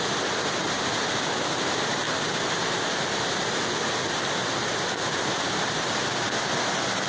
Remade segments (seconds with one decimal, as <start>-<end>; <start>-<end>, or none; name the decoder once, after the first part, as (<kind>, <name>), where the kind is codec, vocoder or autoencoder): none